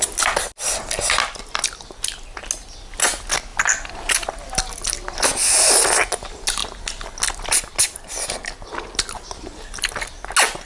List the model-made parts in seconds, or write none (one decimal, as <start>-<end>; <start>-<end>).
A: none